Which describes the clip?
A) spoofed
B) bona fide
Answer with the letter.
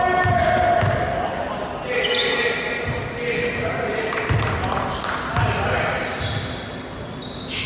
B